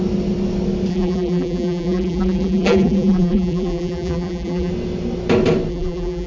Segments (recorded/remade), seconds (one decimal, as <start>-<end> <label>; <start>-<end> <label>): 0.0-0.9 recorded; 0.9-4.7 remade; 4.7-5.7 recorded; 5.7-6.3 remade